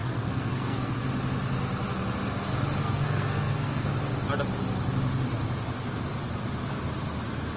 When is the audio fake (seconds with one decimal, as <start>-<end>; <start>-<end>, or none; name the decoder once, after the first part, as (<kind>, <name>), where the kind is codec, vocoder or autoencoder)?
0.0-1.0 (codec, SNAC); 2.8-3.9

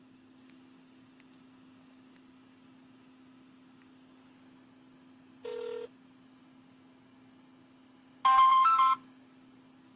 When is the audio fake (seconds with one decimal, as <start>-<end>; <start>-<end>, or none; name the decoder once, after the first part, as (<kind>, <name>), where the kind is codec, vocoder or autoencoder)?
none

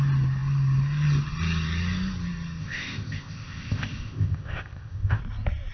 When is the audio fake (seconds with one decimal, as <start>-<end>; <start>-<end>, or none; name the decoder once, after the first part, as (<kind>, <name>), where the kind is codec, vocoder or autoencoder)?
2.6-5.2 (codec, ZipCodec)